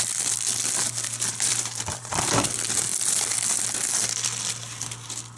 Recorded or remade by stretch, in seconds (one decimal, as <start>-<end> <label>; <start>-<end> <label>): 0.0-1.3 recorded; 1.3-2.1 remade; 2.1-2.9 recorded; 2.9-3.6 remade; 3.6-5.4 recorded